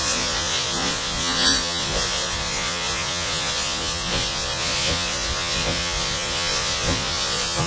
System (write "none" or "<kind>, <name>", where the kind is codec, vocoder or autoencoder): vocoder, Vocos